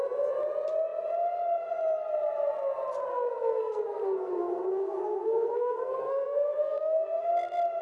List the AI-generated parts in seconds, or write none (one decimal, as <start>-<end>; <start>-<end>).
3.1-7.3